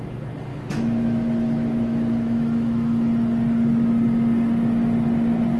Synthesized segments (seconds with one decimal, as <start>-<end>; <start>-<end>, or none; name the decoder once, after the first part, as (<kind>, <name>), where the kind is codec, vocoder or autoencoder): 0.5-3.1 (autoencoder, DAC-VAE)